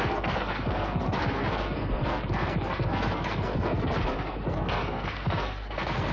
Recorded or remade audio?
remade